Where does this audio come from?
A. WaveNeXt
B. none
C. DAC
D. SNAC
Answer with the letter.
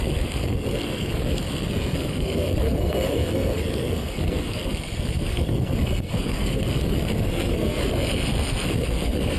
D